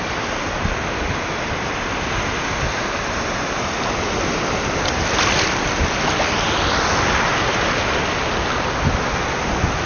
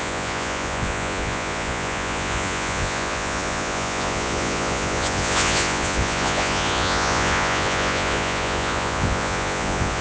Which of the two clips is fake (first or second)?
second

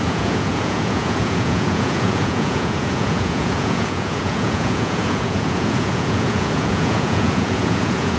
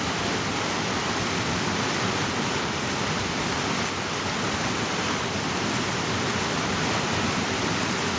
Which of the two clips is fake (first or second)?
first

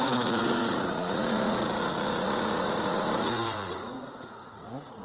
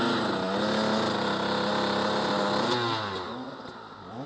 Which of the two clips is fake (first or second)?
first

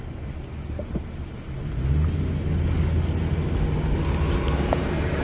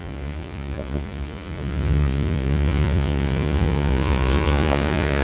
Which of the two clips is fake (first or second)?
second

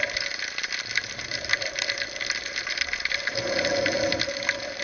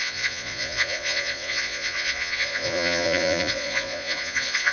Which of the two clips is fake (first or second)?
second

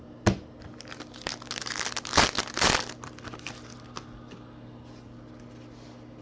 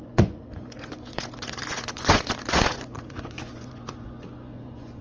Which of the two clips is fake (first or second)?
second